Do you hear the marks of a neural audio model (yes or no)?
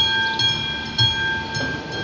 no